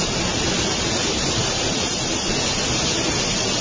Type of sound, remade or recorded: recorded